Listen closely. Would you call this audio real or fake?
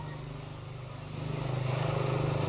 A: real